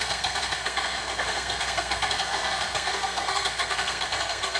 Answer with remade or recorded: remade